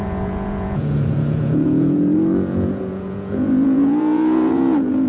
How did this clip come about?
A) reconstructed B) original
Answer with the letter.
A